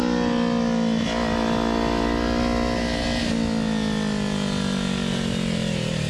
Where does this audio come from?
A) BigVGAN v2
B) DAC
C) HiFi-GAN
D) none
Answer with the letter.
D